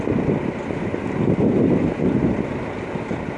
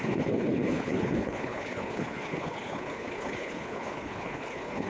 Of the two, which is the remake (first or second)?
second